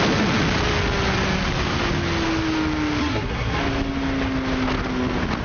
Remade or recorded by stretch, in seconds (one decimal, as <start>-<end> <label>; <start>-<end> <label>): 0.0-3.0 recorded; 3.0-3.6 remade; 3.6-5.4 recorded